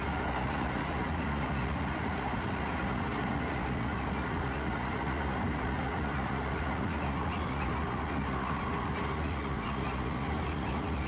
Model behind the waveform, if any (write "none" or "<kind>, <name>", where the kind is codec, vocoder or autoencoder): vocoder, Vocos